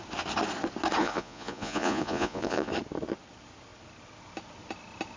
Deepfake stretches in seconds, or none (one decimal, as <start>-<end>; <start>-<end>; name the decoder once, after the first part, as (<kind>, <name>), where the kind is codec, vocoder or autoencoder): 1.0-2.7 (vocoder, Vocos)